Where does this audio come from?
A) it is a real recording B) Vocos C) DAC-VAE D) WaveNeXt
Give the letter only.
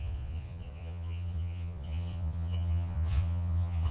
B